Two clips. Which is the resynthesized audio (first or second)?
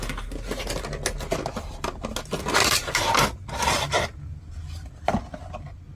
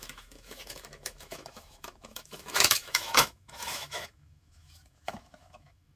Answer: second